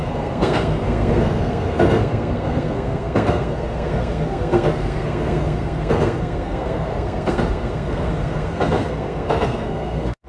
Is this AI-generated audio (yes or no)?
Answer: yes